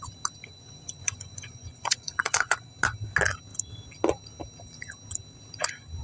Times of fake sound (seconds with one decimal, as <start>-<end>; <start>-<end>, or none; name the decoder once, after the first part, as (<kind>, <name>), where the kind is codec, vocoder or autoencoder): 0.4-2.7 (vocoder, Vocos)